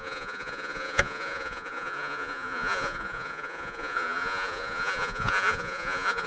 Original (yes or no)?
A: no